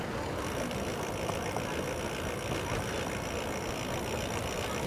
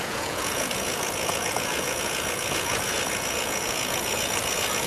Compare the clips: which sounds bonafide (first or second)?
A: first